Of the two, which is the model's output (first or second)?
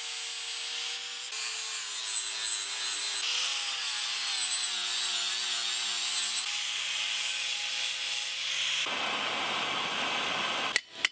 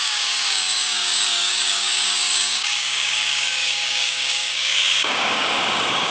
second